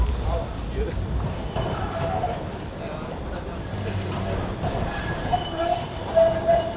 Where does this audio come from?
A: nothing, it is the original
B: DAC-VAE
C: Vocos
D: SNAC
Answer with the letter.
A